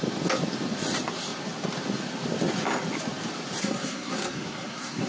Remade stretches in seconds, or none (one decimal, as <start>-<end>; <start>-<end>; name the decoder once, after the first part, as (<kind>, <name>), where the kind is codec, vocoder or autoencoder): 3.6-5.1 (codec, SNAC)